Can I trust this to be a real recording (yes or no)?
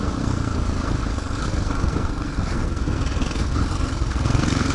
no